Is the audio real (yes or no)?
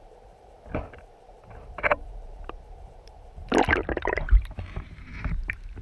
no